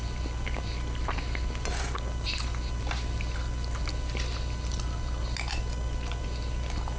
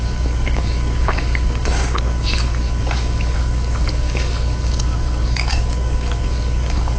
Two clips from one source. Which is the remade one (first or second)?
second